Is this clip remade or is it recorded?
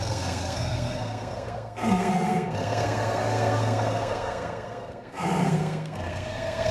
remade